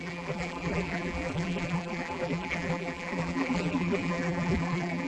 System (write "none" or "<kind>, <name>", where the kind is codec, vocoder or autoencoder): vocoder, BigVGAN v2